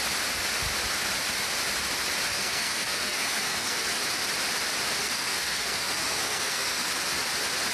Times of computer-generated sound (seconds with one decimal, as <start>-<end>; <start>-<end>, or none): 2.3-4.0; 5.0-6.9